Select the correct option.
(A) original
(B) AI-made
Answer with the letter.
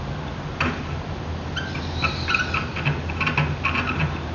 A